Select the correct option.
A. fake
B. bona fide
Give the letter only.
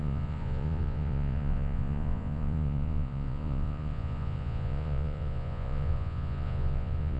A